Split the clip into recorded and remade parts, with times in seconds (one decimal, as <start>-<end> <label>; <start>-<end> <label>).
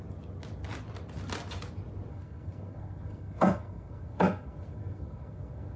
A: 0.0-2.1 recorded; 2.1-5.8 remade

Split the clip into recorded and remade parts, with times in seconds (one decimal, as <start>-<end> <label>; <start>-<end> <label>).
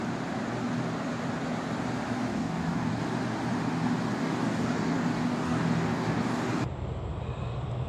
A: 0.0-2.3 recorded; 2.3-3.0 remade; 3.0-4.2 recorded; 4.2-6.2 remade; 6.2-7.9 recorded